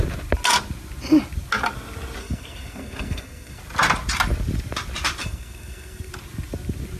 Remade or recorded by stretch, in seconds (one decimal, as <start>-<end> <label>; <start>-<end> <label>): 0.0-2.2 recorded; 2.2-3.6 remade; 3.6-5.2 recorded; 5.2-6.1 remade; 6.1-7.0 recorded